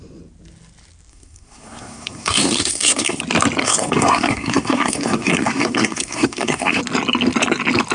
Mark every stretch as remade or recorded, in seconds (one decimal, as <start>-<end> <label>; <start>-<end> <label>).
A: 0.0-1.1 recorded; 1.1-3.2 remade; 3.2-3.6 recorded; 3.6-6.8 remade; 6.8-7.9 recorded